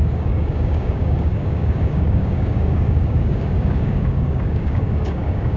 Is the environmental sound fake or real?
fake